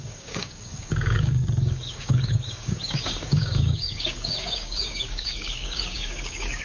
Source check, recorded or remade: remade